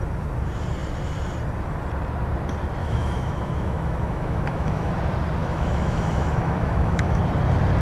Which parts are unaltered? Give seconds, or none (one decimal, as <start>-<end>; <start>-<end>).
0.0-2.8; 4.9-5.4; 7.2-7.8